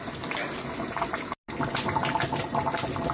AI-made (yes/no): no